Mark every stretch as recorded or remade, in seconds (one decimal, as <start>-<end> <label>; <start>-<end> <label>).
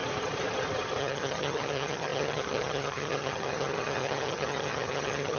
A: 0.0-1.0 recorded; 1.0-5.4 remade